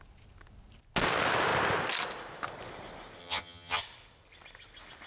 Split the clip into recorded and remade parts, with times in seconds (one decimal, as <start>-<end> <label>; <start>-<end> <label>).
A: 0.0-3.2 recorded; 3.2-3.8 remade; 3.8-5.1 recorded